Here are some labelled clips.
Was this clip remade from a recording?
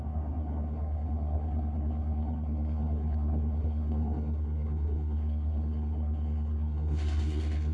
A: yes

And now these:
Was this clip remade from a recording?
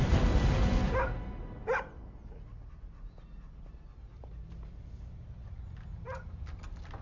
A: no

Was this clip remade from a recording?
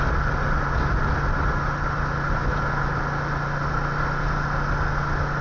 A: no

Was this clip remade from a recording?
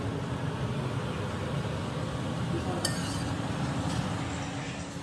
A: no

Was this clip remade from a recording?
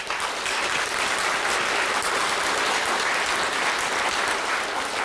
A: no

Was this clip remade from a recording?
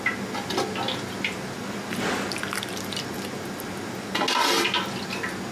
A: no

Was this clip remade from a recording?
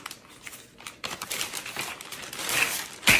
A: yes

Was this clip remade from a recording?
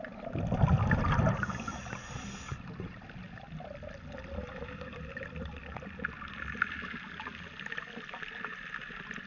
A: no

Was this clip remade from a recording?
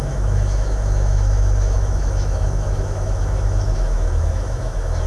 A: yes